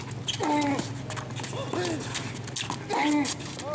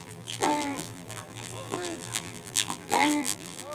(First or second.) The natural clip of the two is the first